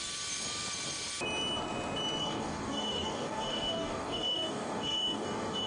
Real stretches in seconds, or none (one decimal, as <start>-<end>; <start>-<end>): 0.0-2.2

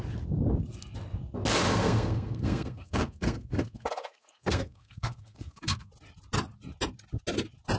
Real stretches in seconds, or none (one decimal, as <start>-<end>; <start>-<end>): 0.0-1.7; 5.9-7.8

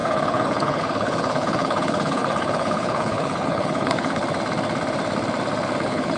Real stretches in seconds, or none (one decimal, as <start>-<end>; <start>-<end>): 4.2-5.8

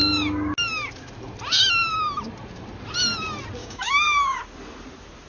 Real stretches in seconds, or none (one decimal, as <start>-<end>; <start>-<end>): 0.0-3.6; 4.4-5.3

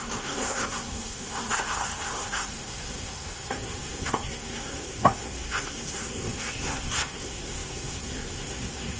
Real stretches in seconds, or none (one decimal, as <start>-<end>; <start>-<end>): none

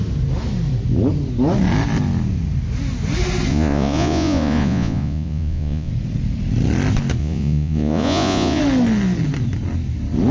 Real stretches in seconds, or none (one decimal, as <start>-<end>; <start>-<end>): 0.0-3.5; 5.9-7.2; 8.6-10.3

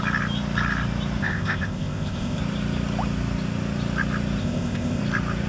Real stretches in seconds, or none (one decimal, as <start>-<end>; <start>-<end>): 0.0-1.2; 2.4-4.4; 5.0-5.5